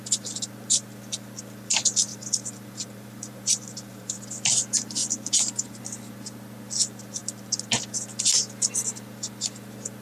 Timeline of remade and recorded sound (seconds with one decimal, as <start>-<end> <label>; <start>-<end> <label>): 0.0-2.1 recorded; 2.1-4.2 remade; 4.2-5.0 recorded; 5.0-5.8 remade; 5.8-10.0 recorded